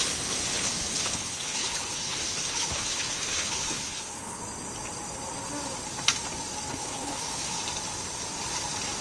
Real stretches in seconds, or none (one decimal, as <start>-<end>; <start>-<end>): 0.0-0.5; 4.4-6.7; 7.6-9.0